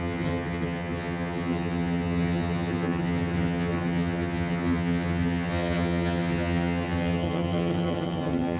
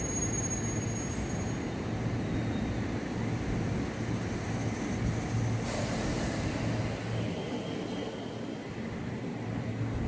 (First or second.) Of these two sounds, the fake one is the first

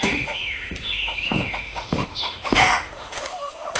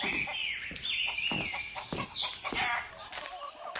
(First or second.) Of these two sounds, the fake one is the first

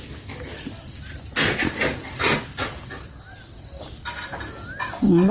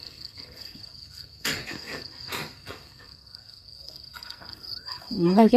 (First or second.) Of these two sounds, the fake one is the second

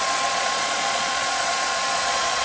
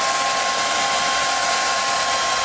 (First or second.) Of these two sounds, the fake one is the first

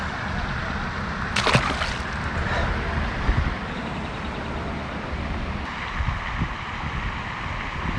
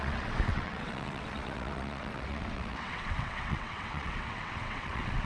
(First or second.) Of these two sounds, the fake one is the second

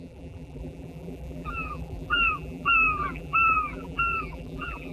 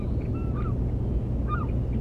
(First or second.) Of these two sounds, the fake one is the first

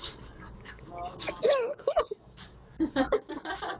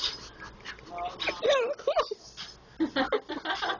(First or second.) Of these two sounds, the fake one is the first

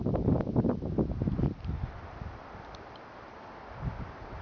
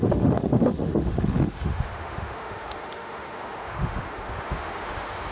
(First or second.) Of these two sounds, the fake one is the second